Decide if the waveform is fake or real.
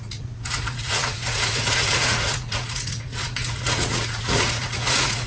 fake